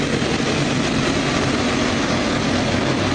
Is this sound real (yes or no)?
yes